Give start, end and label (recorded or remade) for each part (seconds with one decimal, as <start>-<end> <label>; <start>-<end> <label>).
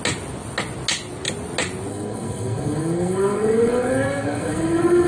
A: 0.0-1.9 recorded; 1.9-5.1 remade